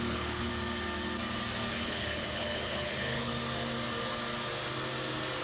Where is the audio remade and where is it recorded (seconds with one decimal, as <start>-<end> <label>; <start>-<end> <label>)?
0.0-0.5 remade; 0.5-1.7 recorded; 1.7-3.3 remade; 3.3-5.4 recorded